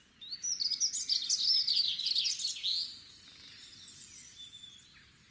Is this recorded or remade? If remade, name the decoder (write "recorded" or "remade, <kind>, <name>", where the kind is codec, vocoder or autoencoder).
recorded